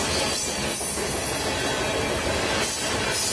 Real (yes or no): yes